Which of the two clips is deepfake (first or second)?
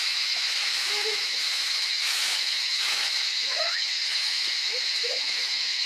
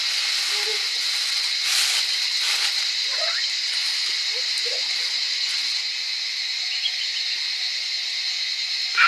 first